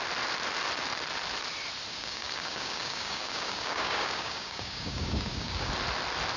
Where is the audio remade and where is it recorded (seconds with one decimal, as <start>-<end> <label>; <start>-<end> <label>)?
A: 0.0-1.9 recorded; 1.9-5.7 remade; 5.7-6.4 recorded